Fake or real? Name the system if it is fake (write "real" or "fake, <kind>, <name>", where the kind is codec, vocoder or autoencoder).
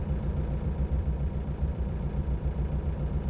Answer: fake, vocoder, BigVGAN v2